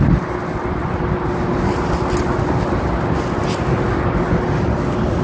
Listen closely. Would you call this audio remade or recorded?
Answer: recorded